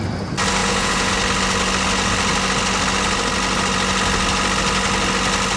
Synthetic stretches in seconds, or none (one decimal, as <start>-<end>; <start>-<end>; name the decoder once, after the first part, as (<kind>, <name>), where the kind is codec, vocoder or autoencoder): 0.6-1.1 (vocoder, Vocos)